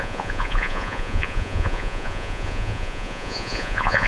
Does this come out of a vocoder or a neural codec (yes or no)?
yes